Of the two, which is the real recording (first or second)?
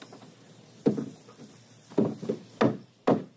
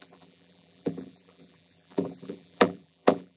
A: first